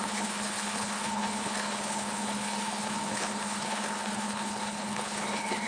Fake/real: fake